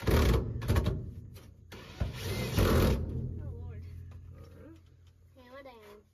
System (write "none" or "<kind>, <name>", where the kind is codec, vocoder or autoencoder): none